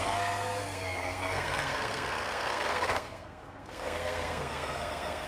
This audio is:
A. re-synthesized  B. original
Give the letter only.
A